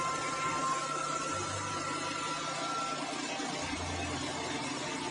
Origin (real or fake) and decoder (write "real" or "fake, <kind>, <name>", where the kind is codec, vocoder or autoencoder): real